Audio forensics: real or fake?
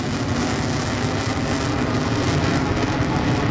real